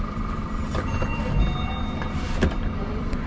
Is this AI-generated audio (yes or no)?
yes